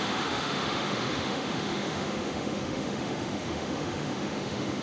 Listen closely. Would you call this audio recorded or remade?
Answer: remade